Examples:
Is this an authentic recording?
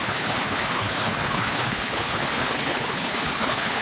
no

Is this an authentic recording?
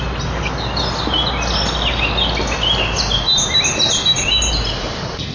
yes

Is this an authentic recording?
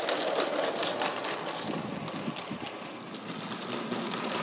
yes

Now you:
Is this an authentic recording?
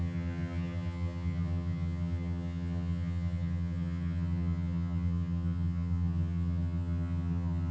no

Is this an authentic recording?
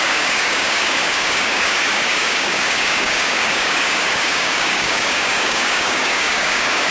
no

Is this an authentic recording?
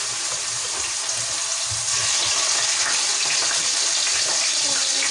yes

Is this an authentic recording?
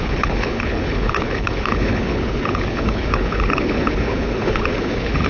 no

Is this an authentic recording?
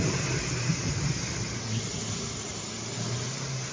yes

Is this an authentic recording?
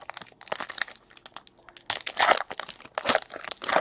yes